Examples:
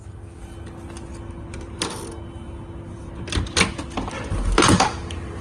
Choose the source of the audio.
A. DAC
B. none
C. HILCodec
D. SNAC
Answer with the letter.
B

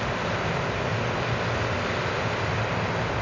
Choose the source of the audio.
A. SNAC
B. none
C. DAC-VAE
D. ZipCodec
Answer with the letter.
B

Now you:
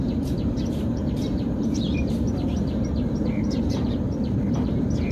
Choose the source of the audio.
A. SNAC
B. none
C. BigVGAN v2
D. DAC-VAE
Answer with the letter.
C